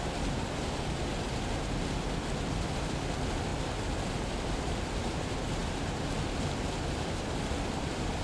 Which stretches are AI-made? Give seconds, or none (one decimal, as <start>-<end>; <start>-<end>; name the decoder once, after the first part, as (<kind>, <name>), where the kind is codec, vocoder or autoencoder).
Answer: none

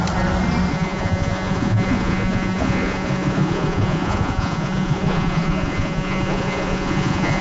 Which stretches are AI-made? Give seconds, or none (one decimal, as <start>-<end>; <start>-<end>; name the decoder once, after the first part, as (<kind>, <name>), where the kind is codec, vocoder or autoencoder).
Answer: 0.7-7.4 (vocoder, Vocos)

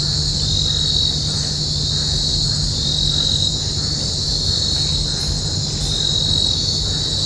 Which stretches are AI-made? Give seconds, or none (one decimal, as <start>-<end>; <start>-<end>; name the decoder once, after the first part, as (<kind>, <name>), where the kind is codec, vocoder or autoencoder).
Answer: none

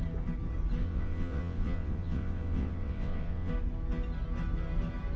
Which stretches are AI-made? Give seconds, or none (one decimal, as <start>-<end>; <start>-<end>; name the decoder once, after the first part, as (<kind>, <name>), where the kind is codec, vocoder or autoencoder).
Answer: 0.8-3.5 (vocoder, WaveNeXt)

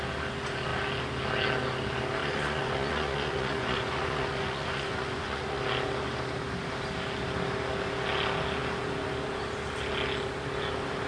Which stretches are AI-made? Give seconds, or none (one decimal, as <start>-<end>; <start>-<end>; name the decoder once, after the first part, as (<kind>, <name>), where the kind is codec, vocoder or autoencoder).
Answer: 2.2-5.6 (vocoder, Vocos)